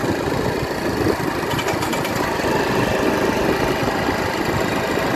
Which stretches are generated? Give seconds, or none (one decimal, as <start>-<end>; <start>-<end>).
none